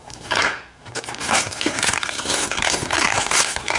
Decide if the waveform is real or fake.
fake